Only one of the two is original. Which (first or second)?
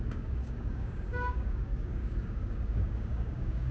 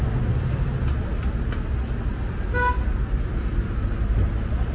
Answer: second